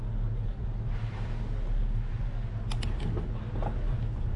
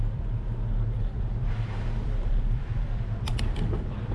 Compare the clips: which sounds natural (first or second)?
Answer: first